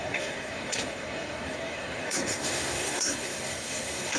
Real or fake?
fake